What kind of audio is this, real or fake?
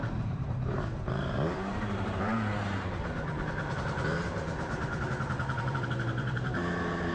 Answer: fake